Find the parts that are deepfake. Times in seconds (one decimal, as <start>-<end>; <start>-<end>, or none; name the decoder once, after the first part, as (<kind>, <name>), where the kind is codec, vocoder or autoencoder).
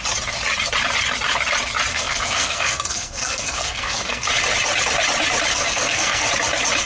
1.9-4.3 (codec, SNAC); 5.5-6.3